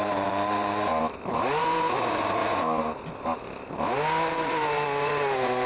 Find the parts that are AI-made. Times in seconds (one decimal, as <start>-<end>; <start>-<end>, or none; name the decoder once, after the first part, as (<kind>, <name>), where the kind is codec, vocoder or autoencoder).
0.0-0.9 (vocoder, BigVGAN v2); 1.6-2.4; 4.3-5.7

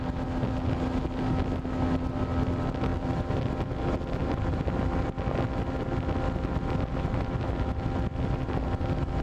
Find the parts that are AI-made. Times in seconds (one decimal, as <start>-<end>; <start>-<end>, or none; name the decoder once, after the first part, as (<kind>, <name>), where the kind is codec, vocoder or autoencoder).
2.9-3.4 (vocoder, BigVGAN v2); 4.2-5.1

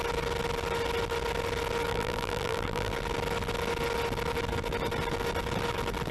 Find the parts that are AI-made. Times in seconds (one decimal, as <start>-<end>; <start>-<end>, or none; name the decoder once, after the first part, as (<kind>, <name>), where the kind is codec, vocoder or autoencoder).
1.9-2.9 (vocoder, BigVGAN v2)

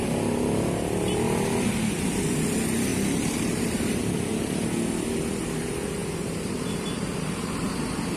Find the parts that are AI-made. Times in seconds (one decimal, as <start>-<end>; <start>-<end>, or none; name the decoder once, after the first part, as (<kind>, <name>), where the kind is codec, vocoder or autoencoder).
2.9-4.0 (vocoder, BigVGAN v2); 6.0-8.2

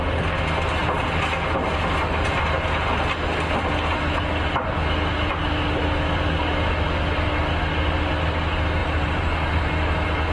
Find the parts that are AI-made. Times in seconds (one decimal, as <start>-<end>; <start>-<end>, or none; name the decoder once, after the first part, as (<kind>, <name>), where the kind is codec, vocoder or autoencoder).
8.8-9.7 (vocoder, BigVGAN v2)

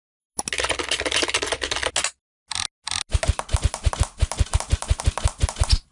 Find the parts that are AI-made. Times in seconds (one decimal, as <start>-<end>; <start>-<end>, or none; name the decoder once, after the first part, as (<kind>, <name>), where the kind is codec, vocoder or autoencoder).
none

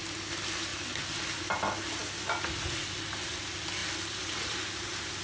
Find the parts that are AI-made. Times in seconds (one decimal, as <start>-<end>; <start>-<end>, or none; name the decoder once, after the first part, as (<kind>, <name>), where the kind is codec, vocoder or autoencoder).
0.7-1.4 (vocoder, BigVGAN v2); 3.8-5.2